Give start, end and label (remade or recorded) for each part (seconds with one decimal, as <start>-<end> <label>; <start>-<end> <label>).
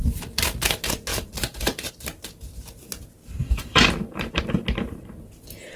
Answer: 0.0-1.1 recorded; 1.1-1.9 remade; 1.9-3.4 recorded; 3.4-4.4 remade; 4.4-5.8 recorded